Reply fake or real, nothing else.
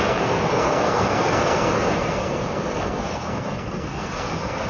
fake